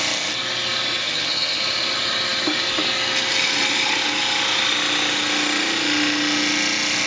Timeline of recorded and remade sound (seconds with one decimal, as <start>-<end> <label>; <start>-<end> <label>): 0.0-1.0 recorded; 1.0-1.6 remade; 1.6-7.1 recorded